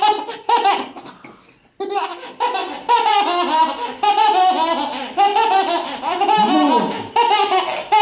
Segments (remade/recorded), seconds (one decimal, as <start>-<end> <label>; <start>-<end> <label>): 0.0-5.3 recorded; 5.3-6.0 remade; 6.0-8.0 recorded

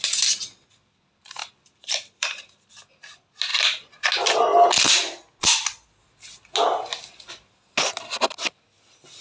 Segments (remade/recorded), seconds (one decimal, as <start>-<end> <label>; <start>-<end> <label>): 0.0-1.4 recorded; 1.4-2.7 remade; 2.7-9.2 recorded

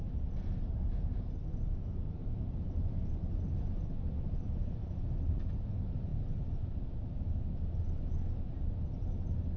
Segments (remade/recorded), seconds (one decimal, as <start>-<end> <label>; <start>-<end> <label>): 0.0-2.2 recorded; 2.2-5.5 remade; 5.5-9.6 recorded

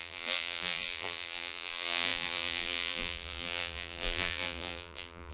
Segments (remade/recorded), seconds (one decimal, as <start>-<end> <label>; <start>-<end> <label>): 0.0-5.3 remade

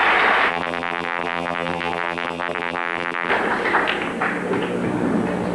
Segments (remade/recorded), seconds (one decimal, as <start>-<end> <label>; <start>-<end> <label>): 0.0-0.5 recorded; 0.5-3.3 remade; 3.3-5.5 recorded